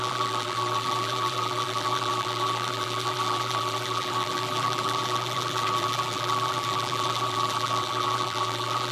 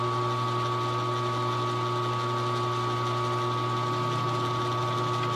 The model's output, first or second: first